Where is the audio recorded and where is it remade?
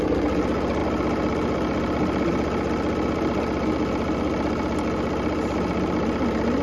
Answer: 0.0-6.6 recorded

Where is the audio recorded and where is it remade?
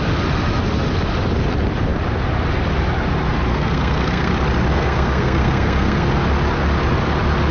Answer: 0.0-3.5 recorded; 3.5-4.3 remade; 4.3-4.7 recorded; 4.7-6.1 remade; 6.1-7.5 recorded